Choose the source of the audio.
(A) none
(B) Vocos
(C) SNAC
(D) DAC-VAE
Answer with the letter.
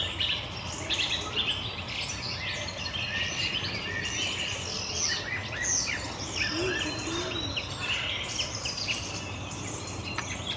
A